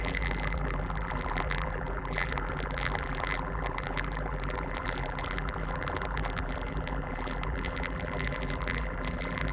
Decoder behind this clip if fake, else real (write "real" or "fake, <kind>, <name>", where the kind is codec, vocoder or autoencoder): fake, vocoder, BigVGAN v2